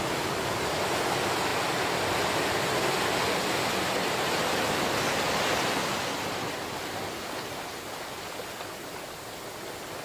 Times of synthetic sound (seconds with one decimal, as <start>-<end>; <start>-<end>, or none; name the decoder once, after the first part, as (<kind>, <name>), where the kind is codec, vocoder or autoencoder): none